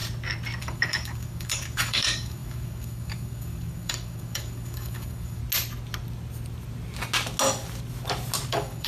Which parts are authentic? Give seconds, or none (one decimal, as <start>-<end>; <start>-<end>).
0.0-0.6; 5.4-8.5